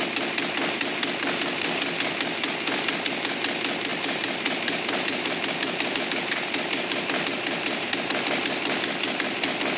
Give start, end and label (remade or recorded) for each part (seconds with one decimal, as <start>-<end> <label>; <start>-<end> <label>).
0.0-3.9 recorded; 3.9-8.2 remade; 8.2-9.8 recorded